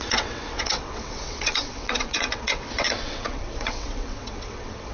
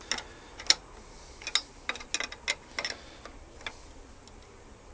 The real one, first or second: second